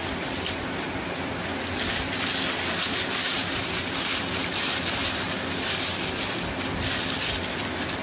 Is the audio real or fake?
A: real